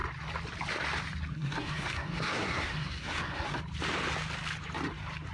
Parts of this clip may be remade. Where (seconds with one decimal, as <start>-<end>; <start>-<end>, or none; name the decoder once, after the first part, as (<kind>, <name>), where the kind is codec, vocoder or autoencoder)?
1.3-3.6 (codec, SNAC)

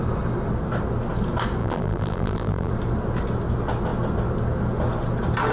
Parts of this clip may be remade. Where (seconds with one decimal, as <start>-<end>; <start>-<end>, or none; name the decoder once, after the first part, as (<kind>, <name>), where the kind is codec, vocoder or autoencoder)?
1.6-2.7 (vocoder, BigVGAN v2)

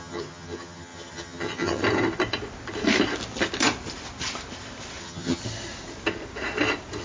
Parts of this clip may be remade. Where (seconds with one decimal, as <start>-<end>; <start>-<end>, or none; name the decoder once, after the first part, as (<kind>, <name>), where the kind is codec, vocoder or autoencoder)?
0.0-1.8 (vocoder, HiFi-GAN); 5.0-5.4

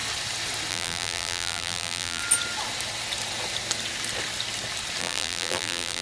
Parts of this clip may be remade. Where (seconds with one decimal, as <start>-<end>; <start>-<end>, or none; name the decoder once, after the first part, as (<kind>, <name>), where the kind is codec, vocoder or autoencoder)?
0.7-2.2 (vocoder, BigVGAN v2); 5.0-6.0

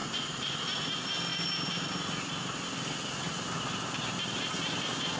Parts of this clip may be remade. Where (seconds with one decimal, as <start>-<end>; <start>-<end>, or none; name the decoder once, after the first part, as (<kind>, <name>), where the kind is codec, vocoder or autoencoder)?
0.0-0.9 (vocoder, Vocos)

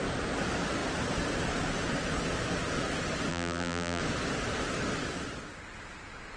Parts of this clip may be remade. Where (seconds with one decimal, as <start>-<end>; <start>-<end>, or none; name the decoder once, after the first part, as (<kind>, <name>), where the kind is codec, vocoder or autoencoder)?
3.3-4.0 (vocoder, BigVGAN v2)

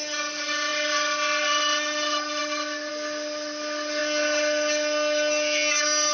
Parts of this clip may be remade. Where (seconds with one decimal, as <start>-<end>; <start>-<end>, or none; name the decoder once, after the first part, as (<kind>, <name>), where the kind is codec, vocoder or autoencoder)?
none

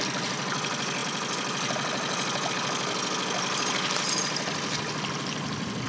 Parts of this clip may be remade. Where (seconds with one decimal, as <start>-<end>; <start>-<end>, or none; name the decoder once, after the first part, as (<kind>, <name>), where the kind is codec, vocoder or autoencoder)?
none